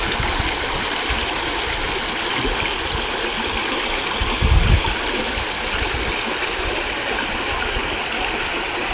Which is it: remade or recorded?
recorded